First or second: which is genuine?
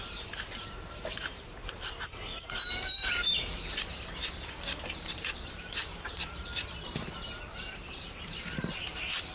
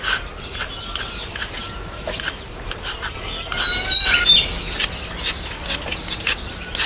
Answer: second